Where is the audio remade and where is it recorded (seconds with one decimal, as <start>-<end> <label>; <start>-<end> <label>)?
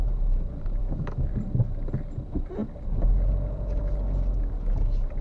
0.0-0.8 recorded; 0.8-1.3 remade; 1.3-5.2 recorded